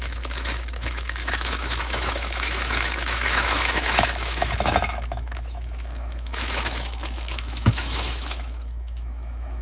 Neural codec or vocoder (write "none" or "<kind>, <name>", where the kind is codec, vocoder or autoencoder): autoencoder, DAC-VAE